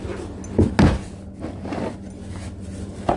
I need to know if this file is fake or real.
real